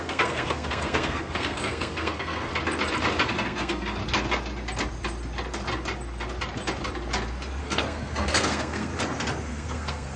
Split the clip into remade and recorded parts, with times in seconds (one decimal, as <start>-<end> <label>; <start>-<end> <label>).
0.0-2.5 remade; 2.5-3.3 recorded; 3.3-4.0 remade; 4.0-7.6 recorded; 7.6-8.9 remade; 8.9-9.5 recorded; 9.5-10.2 remade